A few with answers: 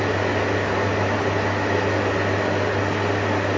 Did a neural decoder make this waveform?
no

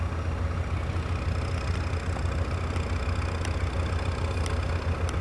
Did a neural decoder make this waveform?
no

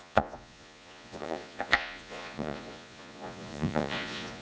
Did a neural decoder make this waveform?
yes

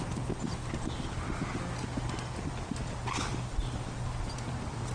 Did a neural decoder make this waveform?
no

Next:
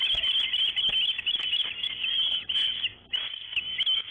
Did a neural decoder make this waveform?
no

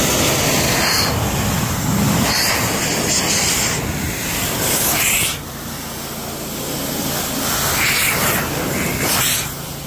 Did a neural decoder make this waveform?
no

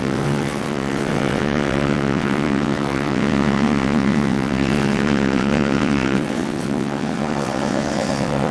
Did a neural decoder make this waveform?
yes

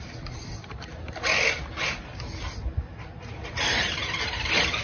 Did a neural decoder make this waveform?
no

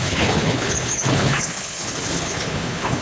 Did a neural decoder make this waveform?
yes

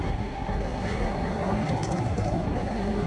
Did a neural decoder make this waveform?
yes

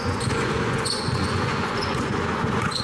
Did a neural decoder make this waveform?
yes